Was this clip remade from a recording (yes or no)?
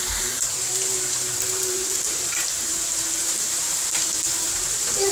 yes